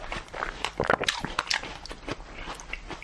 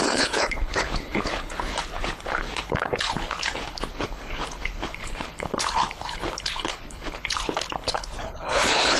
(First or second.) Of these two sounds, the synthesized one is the second